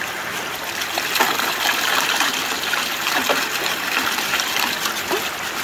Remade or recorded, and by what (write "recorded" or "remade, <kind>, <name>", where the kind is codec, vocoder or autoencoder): recorded